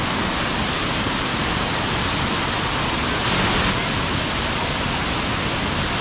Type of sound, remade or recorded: recorded